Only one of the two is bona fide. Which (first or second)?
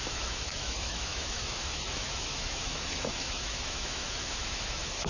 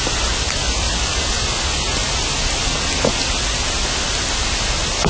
second